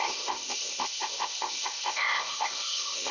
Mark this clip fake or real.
fake